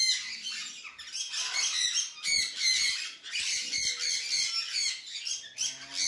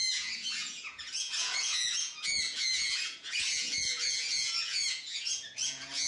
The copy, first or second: second